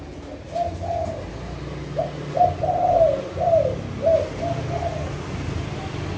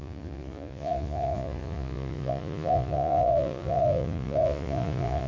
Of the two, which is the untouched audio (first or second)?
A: first